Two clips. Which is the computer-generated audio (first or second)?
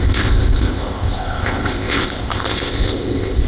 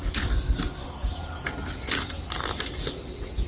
first